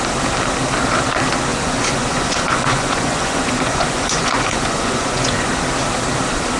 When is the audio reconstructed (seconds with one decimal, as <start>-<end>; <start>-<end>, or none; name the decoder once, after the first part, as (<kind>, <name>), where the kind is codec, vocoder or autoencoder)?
1.5-5.5 (vocoder, Vocos)